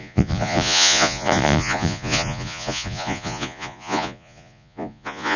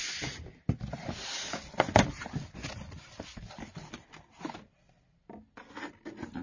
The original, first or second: second